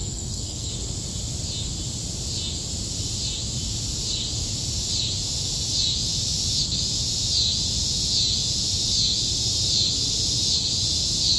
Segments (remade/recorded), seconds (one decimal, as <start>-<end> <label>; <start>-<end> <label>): 0.0-0.7 remade; 0.7-11.4 recorded